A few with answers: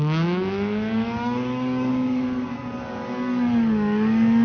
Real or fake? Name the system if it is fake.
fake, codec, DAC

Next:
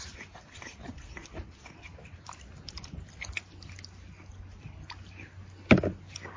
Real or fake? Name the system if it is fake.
real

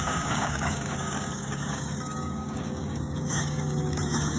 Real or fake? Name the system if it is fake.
fake, codec, DAC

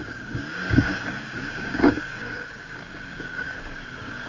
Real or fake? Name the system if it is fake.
fake, codec, DAC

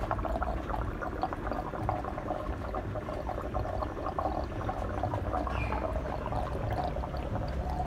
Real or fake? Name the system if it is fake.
real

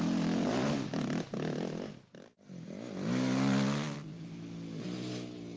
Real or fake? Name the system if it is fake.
real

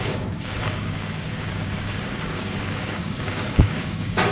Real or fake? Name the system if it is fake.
fake, codec, DAC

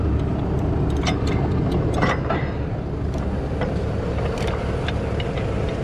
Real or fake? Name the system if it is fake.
real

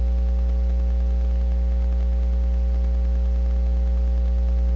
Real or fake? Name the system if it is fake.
real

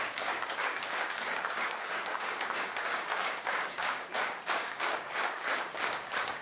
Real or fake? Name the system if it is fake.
fake, codec, DAC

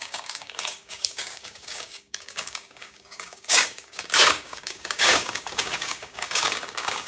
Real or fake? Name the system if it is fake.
fake, codec, DAC